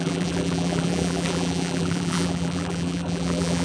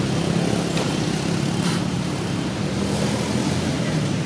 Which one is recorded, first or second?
second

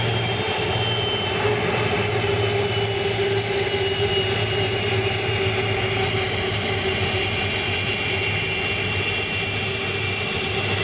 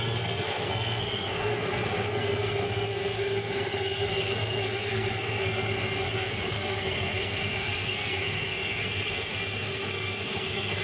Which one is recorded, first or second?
first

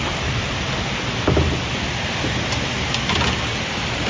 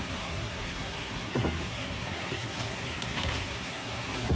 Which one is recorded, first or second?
first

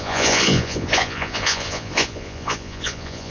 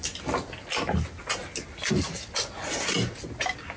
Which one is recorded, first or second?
second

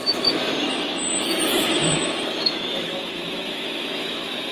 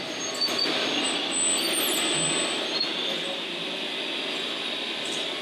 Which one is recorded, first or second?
second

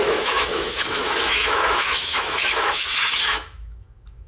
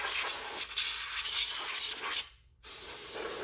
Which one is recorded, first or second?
second